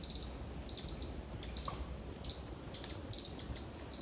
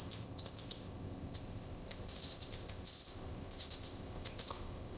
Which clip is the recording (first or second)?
first